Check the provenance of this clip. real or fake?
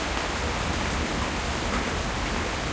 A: real